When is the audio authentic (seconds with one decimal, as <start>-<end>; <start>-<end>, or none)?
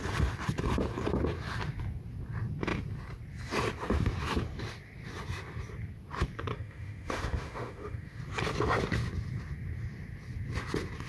0.0-6.5; 8.2-11.1